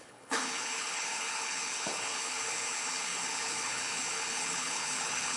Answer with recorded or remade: remade